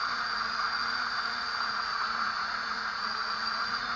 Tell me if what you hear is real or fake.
fake